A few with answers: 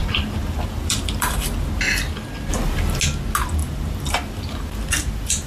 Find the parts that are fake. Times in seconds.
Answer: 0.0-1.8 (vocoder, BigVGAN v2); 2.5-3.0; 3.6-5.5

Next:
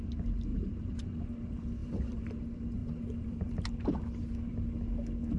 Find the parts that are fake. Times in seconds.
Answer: 0.5-1.3 (vocoder, BigVGAN v2); 1.8-2.3; 2.8-3.5

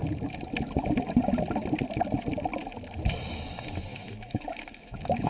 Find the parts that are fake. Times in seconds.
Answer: 3.9-5.3 (autoencoder, DAC-VAE)

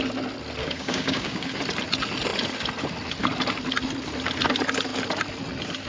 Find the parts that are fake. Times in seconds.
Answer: 0.6-1.6 (codec, DAC)

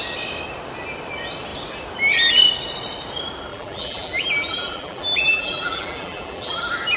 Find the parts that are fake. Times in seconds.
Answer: 3.5-6.6 (vocoder, BigVGAN v2)